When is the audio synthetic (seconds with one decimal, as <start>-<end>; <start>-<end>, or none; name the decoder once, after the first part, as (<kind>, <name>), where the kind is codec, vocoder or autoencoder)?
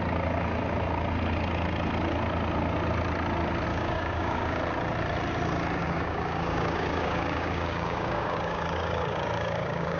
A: 3.7-4.6 (codec, DAC); 5.8-10.0